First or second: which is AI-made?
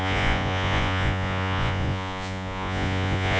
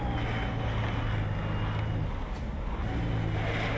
first